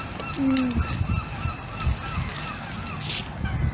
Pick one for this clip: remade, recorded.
recorded